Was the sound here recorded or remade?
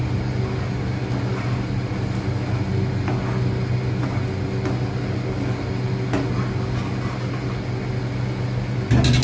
recorded